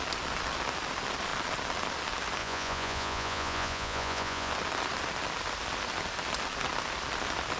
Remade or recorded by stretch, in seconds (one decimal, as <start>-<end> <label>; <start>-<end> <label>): 0.0-2.4 recorded; 2.4-4.5 remade; 4.5-7.6 recorded